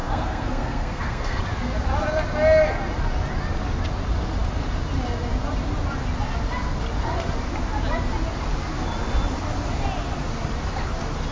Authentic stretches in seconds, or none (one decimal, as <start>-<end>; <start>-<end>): 1.4-11.3